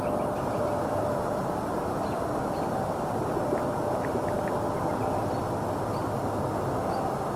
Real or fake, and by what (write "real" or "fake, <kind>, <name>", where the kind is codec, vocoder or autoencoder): real